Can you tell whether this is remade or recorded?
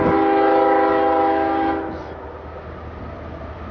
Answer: recorded